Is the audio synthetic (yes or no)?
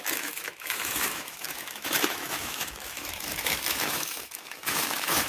yes